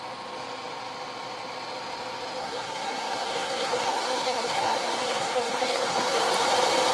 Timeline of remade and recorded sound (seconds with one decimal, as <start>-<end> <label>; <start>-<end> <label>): 0.0-2.4 recorded; 2.4-6.3 remade; 6.3-6.9 recorded